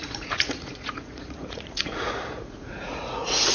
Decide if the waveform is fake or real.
fake